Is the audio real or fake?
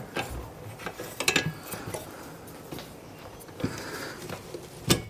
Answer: real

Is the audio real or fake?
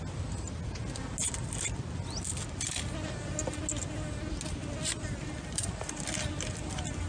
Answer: real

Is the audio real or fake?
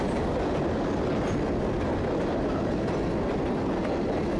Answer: real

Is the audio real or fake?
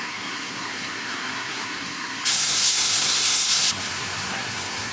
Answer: fake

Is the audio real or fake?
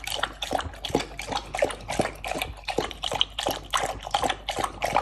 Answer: real